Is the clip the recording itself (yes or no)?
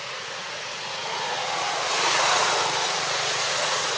no